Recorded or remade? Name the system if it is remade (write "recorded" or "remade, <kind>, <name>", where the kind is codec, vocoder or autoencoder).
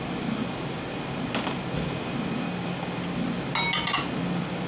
recorded